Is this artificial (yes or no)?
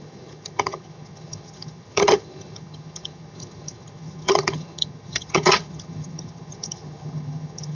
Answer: yes